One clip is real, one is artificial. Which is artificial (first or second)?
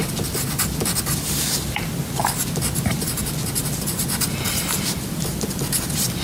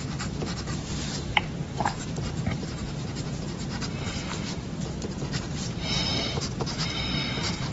second